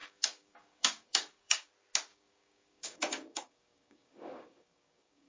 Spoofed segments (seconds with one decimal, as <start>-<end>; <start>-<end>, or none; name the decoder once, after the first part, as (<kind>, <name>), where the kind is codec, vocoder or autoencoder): 0.0-1.7 (codec, DAC); 2.1-5.3